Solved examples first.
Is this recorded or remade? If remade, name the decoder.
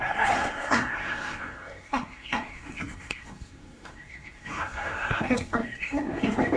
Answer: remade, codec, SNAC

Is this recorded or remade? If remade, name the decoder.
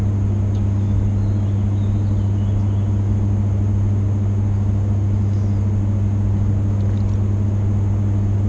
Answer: recorded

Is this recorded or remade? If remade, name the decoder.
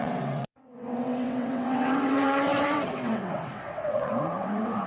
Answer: remade, vocoder, WaveNeXt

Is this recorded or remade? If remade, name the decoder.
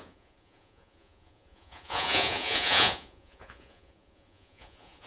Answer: remade, vocoder, Vocos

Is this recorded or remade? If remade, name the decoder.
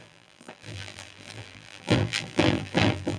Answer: remade, vocoder, BigVGAN v2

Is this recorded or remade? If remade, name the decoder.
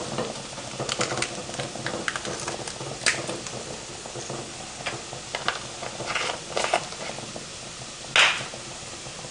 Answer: recorded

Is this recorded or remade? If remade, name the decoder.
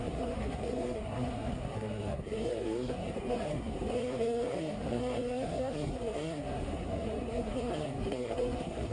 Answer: remade, codec, SNAC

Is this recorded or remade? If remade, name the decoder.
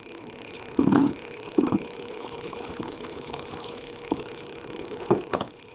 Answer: remade, codec, HILCodec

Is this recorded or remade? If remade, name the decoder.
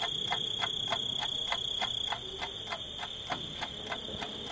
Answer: recorded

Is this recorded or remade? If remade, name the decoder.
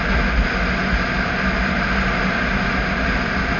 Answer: recorded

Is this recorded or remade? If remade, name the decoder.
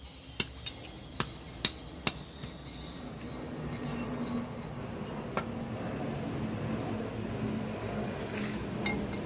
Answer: recorded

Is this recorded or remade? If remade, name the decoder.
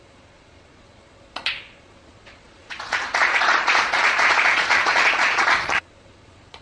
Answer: remade, vocoder, Vocos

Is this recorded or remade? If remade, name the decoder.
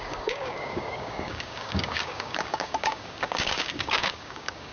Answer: remade, codec, DAC